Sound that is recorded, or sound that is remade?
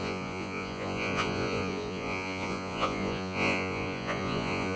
remade